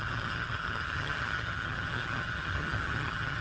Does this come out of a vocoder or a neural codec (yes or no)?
yes